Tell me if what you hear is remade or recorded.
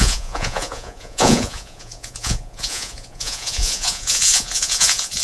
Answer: remade